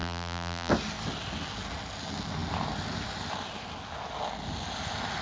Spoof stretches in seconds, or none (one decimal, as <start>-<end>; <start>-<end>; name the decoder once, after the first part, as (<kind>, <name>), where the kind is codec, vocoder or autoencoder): 0.0-0.7 (vocoder, BigVGAN v2)